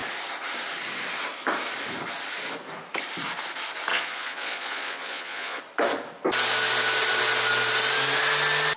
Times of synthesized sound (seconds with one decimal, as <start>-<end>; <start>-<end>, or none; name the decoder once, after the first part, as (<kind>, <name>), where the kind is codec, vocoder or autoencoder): 3.9-5.6 (vocoder, Vocos)